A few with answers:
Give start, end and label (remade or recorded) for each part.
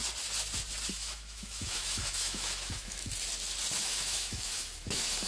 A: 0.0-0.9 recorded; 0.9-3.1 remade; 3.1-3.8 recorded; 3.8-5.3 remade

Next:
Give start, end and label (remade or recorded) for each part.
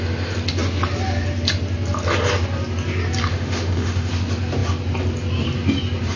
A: 0.0-3.3 recorded; 3.3-4.1 remade; 4.1-6.2 recorded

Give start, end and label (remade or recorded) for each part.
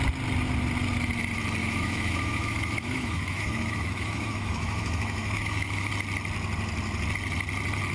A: 0.0-1.6 recorded; 1.6-5.9 remade; 5.9-7.9 recorded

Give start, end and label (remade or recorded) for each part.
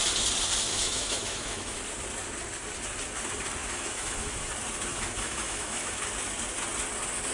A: 0.0-0.7 recorded; 0.7-1.8 remade; 1.8-3.6 recorded; 3.6-4.5 remade; 4.5-4.9 recorded; 4.9-6.0 remade; 6.0-7.3 recorded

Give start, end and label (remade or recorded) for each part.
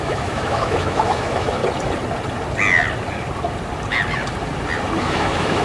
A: 0.0-1.6 remade; 1.6-5.0 recorded; 5.0-5.6 remade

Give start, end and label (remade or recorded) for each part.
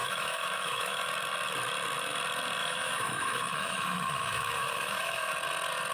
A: 0.0-1.1 remade; 1.1-2.6 recorded; 2.6-5.3 remade; 5.3-5.9 recorded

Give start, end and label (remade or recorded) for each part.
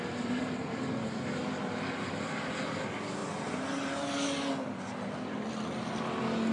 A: 0.0-6.5 recorded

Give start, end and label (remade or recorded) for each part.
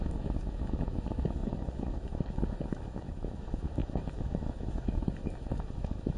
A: 0.0-6.2 remade